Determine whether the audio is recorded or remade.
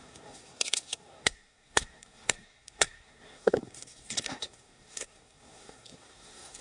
remade